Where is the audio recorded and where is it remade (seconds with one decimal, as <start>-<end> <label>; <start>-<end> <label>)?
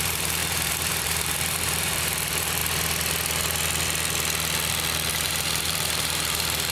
0.0-2.6 remade; 2.6-5.1 recorded; 5.1-6.7 remade